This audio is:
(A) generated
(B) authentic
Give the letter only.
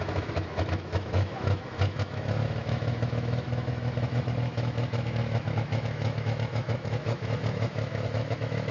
A